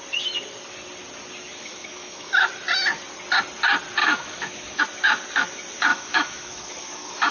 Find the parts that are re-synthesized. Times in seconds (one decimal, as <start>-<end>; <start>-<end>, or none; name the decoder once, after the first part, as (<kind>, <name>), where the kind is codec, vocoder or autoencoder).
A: 1.5-2.5 (autoencoder, DAC-VAE); 4.0-4.8; 5.9-7.3